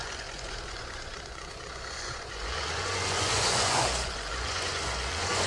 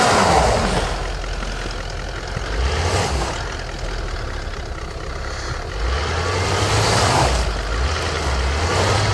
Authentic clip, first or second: second